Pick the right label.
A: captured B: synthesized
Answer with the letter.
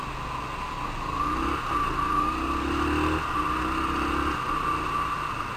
A